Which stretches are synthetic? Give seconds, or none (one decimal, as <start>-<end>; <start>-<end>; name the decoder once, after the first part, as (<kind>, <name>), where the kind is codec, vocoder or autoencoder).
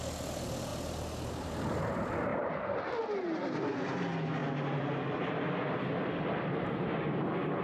none